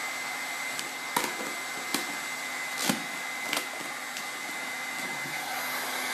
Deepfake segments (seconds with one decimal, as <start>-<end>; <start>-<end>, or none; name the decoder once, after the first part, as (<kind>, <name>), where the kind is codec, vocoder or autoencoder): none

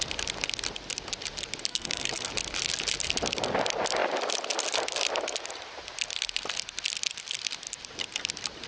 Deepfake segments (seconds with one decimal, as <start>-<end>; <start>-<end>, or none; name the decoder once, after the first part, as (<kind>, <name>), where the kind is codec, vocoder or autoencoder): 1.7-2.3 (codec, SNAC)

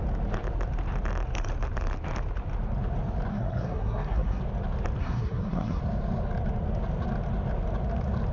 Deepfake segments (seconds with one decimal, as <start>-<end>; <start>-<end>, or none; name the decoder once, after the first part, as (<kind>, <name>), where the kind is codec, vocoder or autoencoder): 3.3-4.4 (codec, SNAC); 5.0-5.8

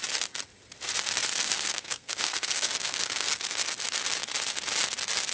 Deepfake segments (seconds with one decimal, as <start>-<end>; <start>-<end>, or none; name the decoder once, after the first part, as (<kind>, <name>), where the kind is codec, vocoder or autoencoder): 1.4-3.4 (codec, SNAC)

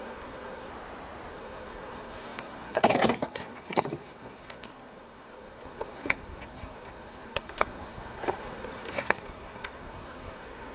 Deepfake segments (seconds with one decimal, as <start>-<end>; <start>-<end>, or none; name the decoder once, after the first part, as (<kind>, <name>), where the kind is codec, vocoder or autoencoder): 0.0-0.7 (codec, SNAC); 1.3-10.7